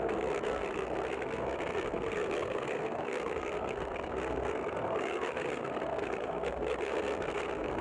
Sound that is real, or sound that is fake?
fake